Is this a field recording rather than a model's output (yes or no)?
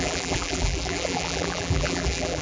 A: no